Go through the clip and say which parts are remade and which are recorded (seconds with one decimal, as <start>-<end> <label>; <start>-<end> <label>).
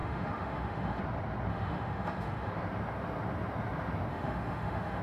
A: 0.0-1.0 remade; 1.0-1.5 recorded; 1.5-2.5 remade; 2.5-4.1 recorded; 4.1-5.0 remade